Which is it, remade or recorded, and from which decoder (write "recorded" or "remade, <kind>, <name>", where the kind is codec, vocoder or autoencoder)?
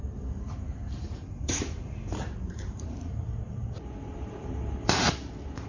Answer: remade, vocoder, BigVGAN v2